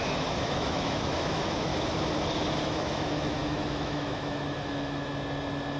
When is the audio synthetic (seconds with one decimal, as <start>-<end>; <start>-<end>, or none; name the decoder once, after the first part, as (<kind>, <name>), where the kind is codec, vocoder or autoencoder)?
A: 0.0-1.7 (autoencoder, DAC-VAE); 2.6-5.1